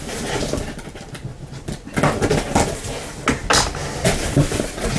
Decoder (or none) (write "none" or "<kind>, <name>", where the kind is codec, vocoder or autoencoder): none